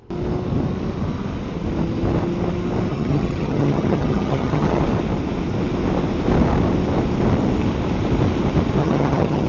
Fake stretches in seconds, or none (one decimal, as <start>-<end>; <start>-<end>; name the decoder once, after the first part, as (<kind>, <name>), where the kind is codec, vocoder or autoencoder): 2.9-4.8 (vocoder, HiFi-GAN); 8.8-9.5